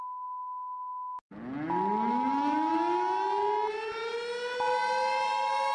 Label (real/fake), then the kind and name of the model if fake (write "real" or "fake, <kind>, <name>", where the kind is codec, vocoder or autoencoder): real